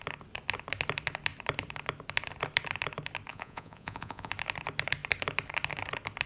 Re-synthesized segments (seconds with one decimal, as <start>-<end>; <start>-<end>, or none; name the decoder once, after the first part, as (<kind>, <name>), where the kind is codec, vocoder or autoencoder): 3.3-4.3 (vocoder, Vocos)